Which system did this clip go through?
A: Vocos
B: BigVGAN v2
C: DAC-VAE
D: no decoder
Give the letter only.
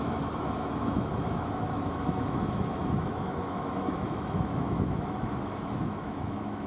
C